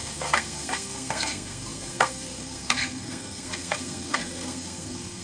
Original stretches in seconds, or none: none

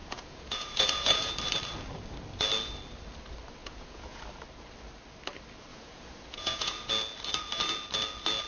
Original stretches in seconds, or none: 1.3-3.6; 4.2-5.7; 6.9-8.5

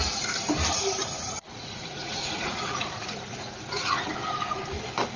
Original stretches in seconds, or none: 0.0-1.0; 4.1-5.2

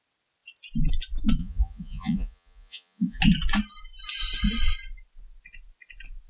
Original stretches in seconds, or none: 0.0-1.4; 3.2-6.3

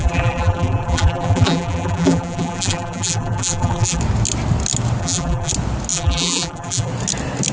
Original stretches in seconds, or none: 4.0-5.0; 5.5-5.9; 6.9-7.5